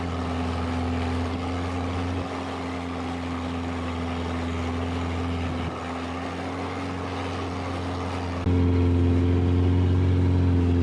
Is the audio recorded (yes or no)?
yes